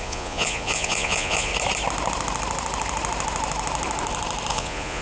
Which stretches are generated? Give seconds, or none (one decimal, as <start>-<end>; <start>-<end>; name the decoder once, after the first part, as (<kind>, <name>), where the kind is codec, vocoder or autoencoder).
0.0-1.5 (vocoder, Vocos); 4.5-5.0